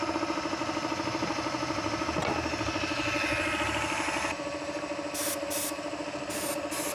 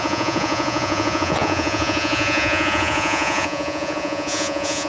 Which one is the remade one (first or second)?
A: second